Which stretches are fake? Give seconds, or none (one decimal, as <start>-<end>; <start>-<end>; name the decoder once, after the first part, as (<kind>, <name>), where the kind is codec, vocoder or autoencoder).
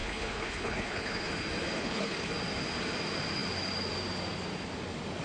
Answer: 0.0-1.3 (codec, HILCodec); 1.8-2.3